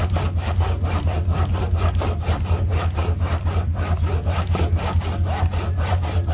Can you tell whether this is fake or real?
real